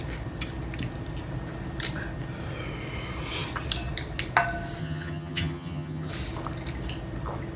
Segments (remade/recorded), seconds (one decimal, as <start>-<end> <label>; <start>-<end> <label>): 0.0-4.8 recorded; 4.8-6.1 remade; 6.1-7.6 recorded